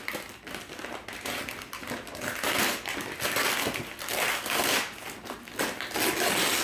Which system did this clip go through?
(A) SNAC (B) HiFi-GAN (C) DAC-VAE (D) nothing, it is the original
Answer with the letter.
D